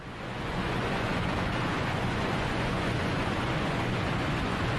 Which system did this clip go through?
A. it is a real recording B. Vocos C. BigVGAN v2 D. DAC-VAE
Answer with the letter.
B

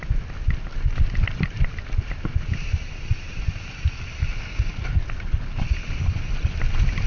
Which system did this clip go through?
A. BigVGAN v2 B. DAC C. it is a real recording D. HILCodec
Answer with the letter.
C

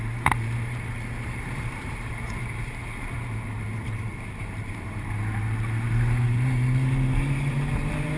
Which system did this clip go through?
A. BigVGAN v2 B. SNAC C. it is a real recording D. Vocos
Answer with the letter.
A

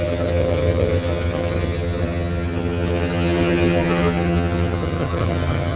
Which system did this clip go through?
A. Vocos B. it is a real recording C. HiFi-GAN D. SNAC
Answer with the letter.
C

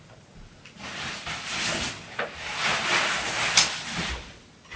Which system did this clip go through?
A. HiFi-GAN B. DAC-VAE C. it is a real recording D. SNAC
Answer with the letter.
C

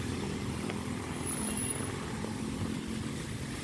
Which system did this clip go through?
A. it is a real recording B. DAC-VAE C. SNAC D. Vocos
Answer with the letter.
A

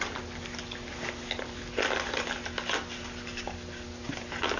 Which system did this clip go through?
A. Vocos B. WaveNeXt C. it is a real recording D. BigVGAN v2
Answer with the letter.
C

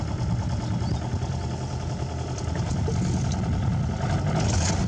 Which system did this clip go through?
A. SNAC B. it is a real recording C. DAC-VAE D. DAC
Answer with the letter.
B